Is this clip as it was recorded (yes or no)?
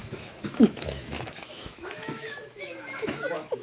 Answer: no